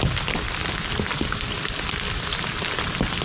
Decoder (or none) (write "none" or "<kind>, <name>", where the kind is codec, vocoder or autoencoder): none